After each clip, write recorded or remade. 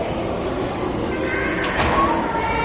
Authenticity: recorded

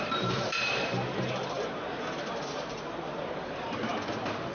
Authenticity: remade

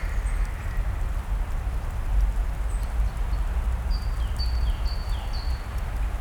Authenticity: recorded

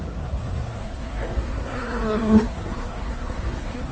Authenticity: remade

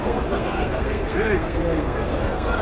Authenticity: remade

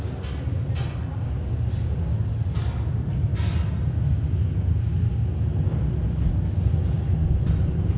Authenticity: recorded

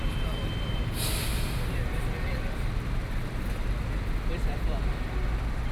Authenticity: recorded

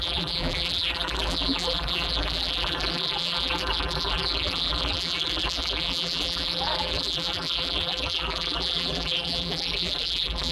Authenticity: remade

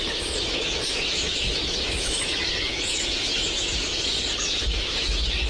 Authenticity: remade